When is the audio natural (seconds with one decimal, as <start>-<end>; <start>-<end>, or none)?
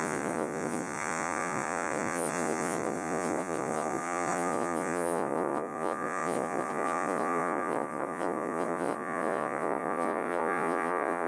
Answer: none